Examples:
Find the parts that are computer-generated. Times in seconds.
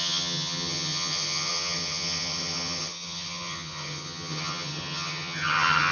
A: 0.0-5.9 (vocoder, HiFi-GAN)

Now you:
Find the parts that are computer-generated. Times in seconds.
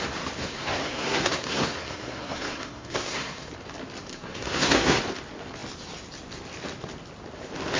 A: 0.4-3.5 (codec, SNAC); 4.1-5.0